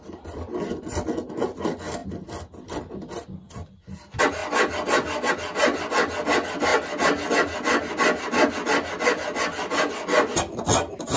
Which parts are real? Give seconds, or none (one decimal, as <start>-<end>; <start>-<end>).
0.0-11.2